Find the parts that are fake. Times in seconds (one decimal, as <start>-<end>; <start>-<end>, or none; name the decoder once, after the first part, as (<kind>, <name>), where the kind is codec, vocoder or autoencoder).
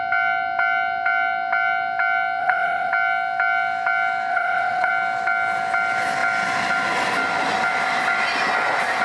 2.4-2.9 (vocoder, WaveNeXt); 4.3-4.9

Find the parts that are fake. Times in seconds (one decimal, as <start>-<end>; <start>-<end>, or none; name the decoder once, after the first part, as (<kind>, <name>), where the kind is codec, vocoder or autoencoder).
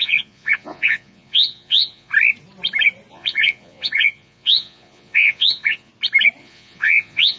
0.0-2.1 (vocoder, Vocos); 3.1-5.9; 6.4-7.4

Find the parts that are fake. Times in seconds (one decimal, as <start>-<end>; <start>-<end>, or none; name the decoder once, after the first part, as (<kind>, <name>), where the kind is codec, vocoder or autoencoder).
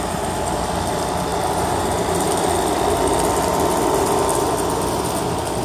none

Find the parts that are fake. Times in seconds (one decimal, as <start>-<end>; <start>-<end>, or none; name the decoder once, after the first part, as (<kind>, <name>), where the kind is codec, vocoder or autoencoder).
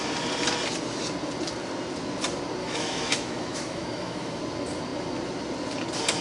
2.6-4.4 (autoencoder, DAC-VAE)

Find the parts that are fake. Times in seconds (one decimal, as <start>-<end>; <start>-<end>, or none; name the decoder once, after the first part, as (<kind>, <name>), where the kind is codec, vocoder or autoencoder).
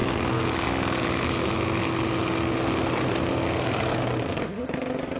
none